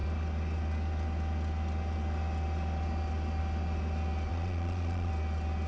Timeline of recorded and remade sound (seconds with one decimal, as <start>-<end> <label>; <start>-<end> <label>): 0.0-4.3 recorded; 4.3-5.1 remade; 5.1-5.7 recorded